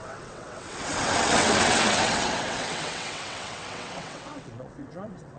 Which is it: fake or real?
fake